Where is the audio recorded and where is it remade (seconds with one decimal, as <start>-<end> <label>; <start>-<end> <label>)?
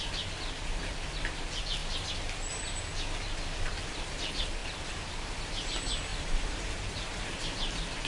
0.0-4.6 recorded; 4.6-5.4 remade; 5.4-6.1 recorded; 6.1-6.6 remade; 6.6-8.1 recorded